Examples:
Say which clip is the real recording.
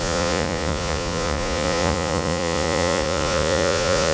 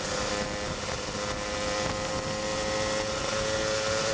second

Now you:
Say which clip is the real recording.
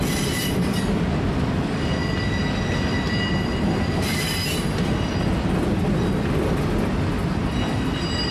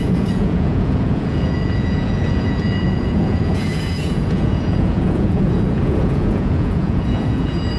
first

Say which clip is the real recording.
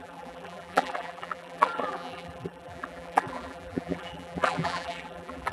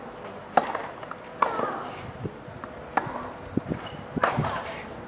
second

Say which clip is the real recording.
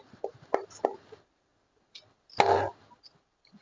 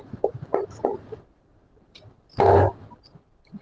first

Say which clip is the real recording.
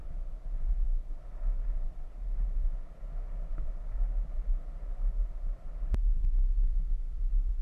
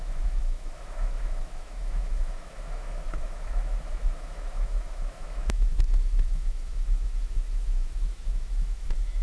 first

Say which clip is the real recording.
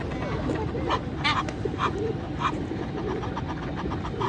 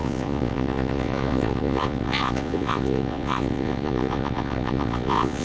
first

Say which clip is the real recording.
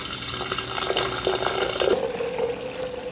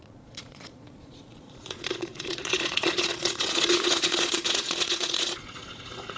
first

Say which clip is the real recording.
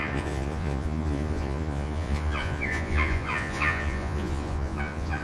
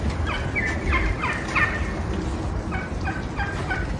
second